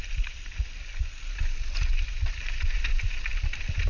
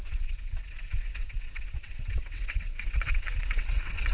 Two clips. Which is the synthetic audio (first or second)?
second